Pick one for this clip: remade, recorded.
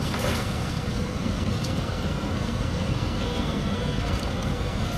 remade